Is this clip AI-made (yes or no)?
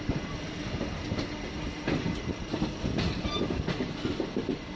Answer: no